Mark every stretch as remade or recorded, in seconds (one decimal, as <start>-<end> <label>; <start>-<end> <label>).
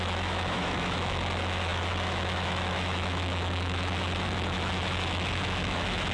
0.0-6.1 remade